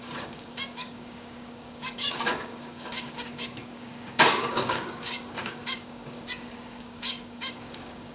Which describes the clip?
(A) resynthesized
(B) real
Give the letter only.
A